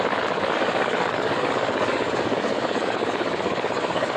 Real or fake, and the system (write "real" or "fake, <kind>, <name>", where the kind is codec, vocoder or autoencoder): fake, codec, DAC